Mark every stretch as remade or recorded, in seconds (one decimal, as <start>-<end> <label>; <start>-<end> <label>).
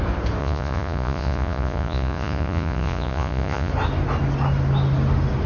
0.0-0.4 recorded; 0.4-3.7 remade; 3.7-5.5 recorded